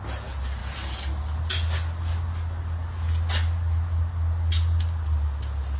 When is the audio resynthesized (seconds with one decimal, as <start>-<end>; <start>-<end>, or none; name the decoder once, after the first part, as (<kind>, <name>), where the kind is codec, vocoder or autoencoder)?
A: none